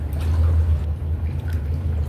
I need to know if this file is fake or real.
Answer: real